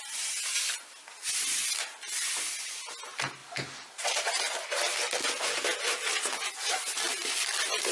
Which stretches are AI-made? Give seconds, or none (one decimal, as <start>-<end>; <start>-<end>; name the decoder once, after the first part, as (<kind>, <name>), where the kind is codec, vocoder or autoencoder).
none

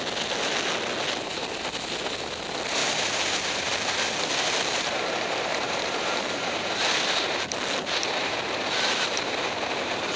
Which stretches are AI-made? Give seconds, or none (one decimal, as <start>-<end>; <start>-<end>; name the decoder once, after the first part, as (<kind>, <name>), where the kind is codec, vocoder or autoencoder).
2.8-7.4 (vocoder, BigVGAN v2); 8.0-10.2